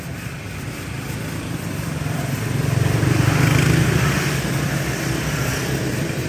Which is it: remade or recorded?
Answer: remade